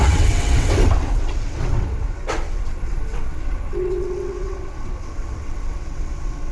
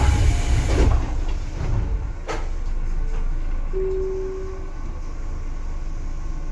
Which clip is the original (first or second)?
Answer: second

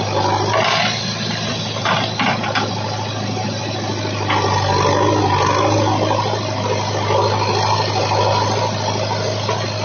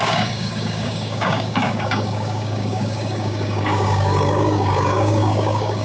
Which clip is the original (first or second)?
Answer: first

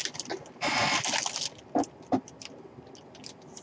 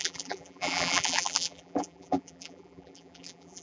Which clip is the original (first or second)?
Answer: first